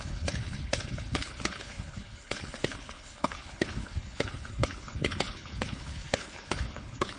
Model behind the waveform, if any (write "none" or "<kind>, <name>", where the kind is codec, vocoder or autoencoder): codec, HILCodec